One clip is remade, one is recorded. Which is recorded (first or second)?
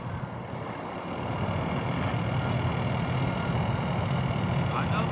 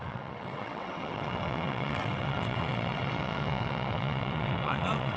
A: first